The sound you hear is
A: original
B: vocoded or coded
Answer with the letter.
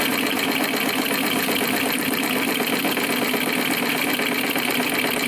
A